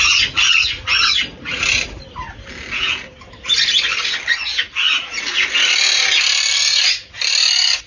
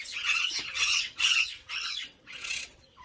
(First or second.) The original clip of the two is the first